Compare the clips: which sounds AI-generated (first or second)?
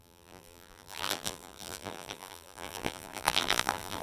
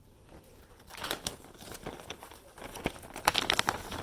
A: first